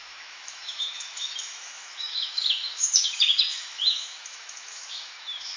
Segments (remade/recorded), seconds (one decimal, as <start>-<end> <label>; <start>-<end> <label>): 0.0-5.6 remade